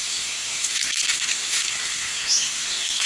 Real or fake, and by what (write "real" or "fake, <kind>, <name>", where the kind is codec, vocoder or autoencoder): fake, codec, SNAC